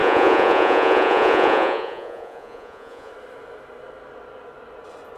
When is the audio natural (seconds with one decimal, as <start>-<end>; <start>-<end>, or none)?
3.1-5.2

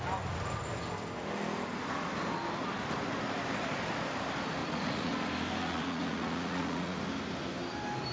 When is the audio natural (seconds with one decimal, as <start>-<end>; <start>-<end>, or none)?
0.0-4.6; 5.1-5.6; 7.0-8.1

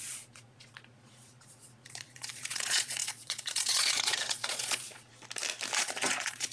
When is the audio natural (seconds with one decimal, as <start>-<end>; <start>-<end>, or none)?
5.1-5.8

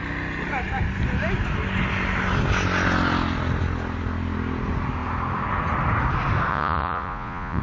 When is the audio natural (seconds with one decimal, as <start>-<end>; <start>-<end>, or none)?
0.0-6.5